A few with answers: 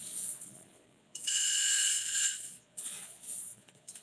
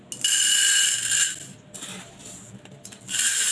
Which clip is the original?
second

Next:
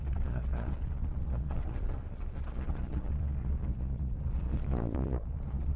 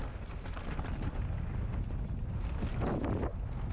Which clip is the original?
second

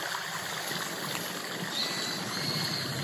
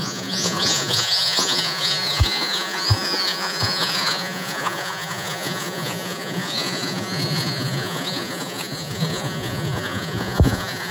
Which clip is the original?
first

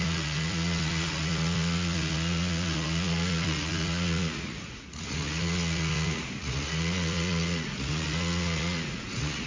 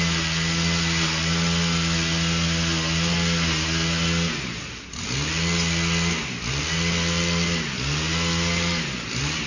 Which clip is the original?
second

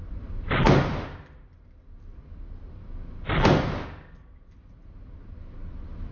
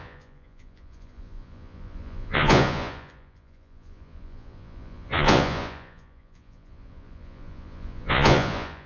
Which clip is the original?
first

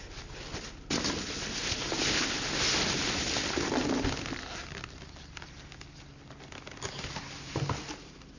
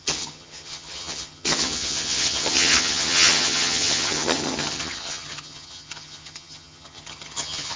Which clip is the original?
first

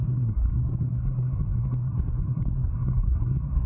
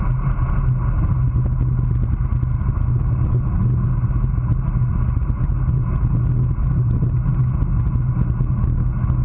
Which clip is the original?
second